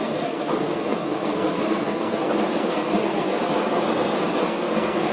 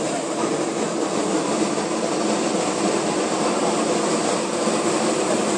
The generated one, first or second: first